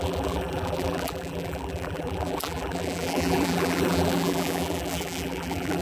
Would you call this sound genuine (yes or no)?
no